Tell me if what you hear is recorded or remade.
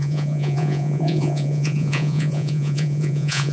remade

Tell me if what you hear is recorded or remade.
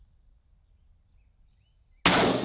recorded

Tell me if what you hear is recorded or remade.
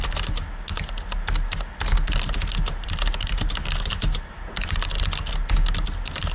recorded